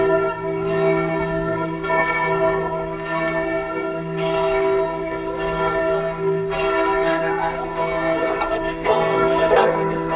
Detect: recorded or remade remade